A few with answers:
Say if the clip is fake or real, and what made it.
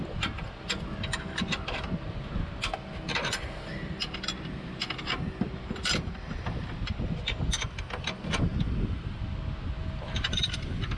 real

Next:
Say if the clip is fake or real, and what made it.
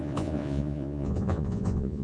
fake, vocoder, Vocos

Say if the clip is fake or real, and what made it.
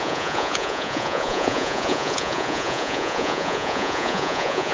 fake, vocoder, Vocos